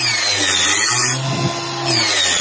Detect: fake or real real